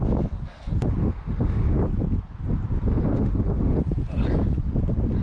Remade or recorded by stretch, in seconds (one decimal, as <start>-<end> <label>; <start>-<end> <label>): 0.0-1.0 recorded; 1.0-1.8 remade; 1.8-2.9 recorded; 2.9-3.8 remade; 3.8-5.2 recorded